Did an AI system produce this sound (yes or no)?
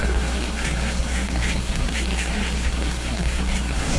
yes